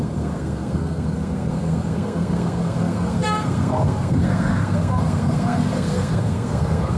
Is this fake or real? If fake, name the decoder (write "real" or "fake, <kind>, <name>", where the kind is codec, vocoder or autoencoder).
fake, codec, SNAC